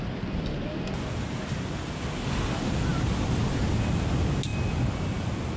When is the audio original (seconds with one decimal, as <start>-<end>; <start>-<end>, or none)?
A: 0.0-5.6